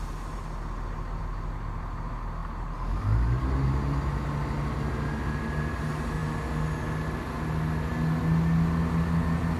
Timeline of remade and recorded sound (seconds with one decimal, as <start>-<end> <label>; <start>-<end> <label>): 0.0-9.6 recorded